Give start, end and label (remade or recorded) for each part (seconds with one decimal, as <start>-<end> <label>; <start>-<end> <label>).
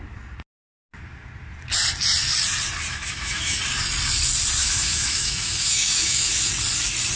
0.0-2.9 recorded; 2.9-3.6 remade; 3.6-4.6 recorded; 4.6-6.5 remade; 6.5-7.2 recorded